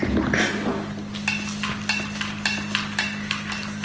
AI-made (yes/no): no